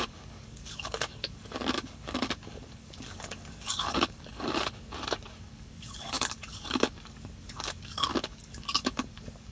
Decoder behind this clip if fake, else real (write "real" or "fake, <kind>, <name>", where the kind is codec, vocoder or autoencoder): fake, codec, DAC